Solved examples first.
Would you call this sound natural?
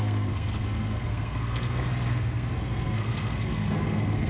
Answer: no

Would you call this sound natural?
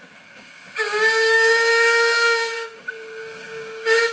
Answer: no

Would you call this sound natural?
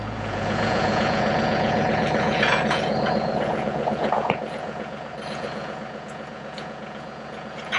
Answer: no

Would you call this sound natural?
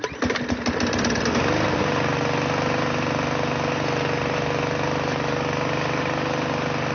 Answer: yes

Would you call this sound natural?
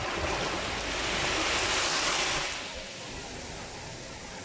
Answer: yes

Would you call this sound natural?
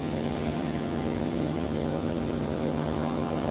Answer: no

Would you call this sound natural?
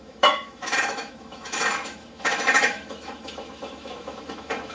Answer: no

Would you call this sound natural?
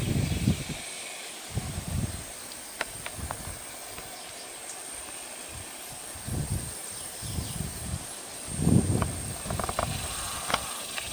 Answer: yes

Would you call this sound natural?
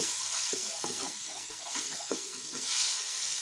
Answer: no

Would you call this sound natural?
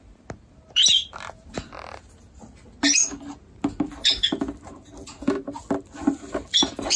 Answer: yes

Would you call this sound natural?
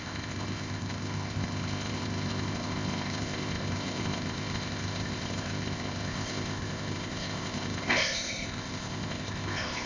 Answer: no